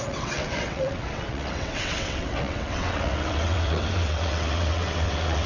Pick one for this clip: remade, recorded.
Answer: remade